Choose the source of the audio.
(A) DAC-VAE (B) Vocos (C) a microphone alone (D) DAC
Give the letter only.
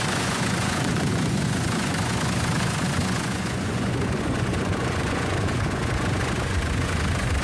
B